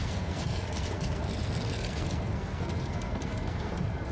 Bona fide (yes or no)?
no